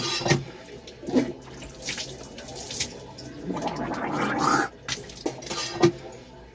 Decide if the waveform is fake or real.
real